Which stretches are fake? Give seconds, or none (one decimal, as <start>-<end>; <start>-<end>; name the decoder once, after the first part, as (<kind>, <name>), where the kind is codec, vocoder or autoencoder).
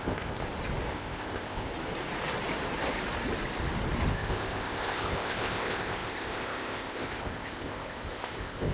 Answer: 0.0-0.4 (codec, ZipCodec); 0.9-1.7; 4.1-8.7